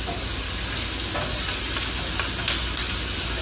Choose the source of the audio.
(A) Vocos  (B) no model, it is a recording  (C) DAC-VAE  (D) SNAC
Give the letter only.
B